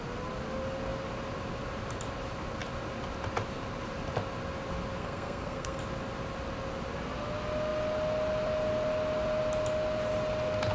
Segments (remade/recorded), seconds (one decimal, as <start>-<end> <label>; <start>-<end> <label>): 0.0-5.0 recorded; 5.0-5.8 remade; 5.8-10.7 recorded